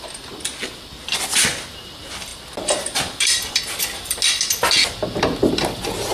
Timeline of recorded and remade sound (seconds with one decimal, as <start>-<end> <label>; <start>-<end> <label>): 0.0-6.1 recorded